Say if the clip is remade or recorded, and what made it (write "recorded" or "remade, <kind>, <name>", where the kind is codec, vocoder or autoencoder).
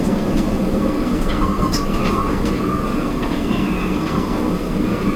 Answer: remade, codec, SNAC